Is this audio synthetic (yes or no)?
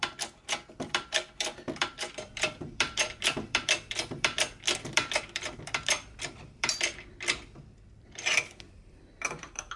yes